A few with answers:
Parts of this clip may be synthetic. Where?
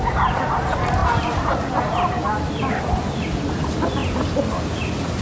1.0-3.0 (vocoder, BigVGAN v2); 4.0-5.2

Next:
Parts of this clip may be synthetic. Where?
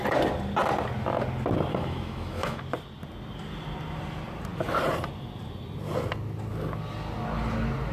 1.7-2.6 (autoencoder, DAC-VAE)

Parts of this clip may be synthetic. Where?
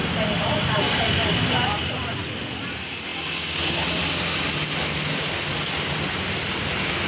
0.0-3.1 (vocoder, BigVGAN v2)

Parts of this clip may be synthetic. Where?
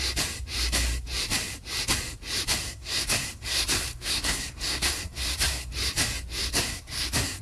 2.6-5.7 (codec, SNAC); 6.5-7.4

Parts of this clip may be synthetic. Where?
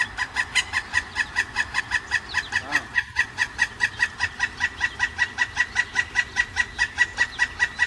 0.9-1.8 (vocoder, Vocos); 2.9-3.5